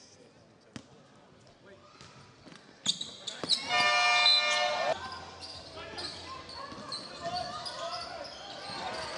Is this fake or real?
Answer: real